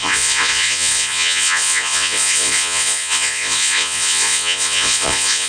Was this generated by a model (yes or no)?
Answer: yes